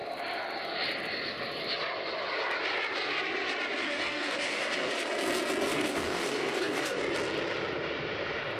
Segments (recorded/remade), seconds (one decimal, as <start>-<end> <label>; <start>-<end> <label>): 0.0-3.8 recorded; 3.8-4.9 remade; 4.9-5.7 recorded; 5.7-7.0 remade; 7.0-8.6 recorded